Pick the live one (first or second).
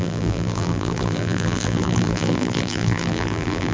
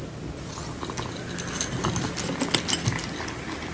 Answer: second